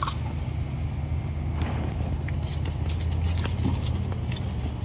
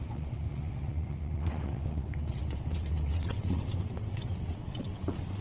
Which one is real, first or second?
first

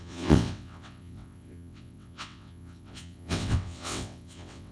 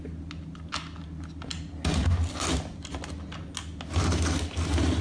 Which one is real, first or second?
second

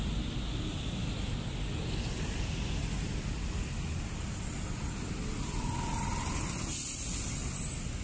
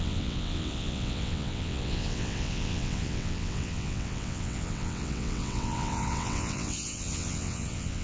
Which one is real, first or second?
first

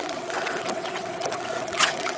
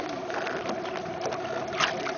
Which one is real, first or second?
second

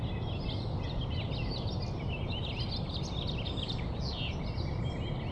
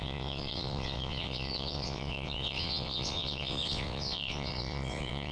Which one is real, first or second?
first